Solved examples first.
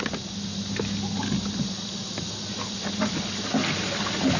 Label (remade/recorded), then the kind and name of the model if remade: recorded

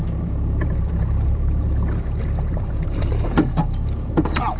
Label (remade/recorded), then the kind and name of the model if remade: remade, vocoder, BigVGAN v2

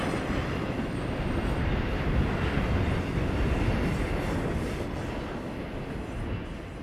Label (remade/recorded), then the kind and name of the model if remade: recorded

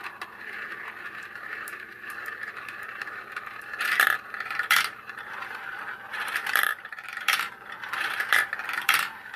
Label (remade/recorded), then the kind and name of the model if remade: remade, vocoder, BigVGAN v2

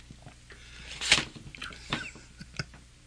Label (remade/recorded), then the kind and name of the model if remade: recorded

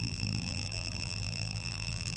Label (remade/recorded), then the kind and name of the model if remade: remade, vocoder, BigVGAN v2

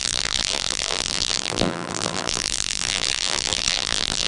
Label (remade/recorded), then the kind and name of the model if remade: remade, vocoder, BigVGAN v2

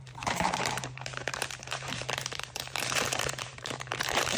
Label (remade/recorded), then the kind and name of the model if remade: remade, vocoder, BigVGAN v2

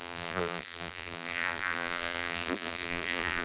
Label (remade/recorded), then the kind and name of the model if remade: remade, vocoder, BigVGAN v2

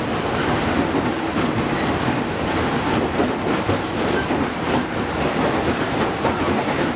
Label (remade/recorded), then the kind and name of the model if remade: remade, vocoder, BigVGAN v2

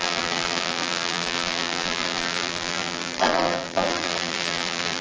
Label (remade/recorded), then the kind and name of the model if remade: remade, vocoder, BigVGAN v2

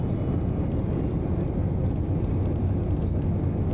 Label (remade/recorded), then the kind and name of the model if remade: recorded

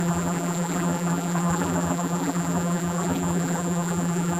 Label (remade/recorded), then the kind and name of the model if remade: remade, vocoder, BigVGAN v2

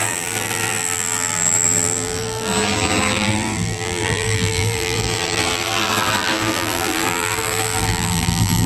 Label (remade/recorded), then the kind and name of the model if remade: remade, vocoder, BigVGAN v2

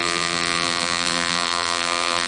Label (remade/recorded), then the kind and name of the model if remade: remade, vocoder, BigVGAN v2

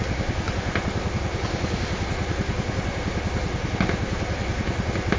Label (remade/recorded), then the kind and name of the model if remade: recorded